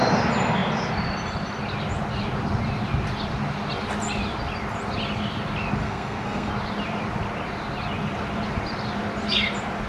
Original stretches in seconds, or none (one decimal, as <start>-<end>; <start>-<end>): 0.0-5.8; 6.5-9.9